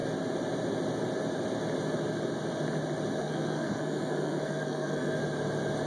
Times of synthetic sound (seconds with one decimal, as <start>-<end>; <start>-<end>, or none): 3.2-5.2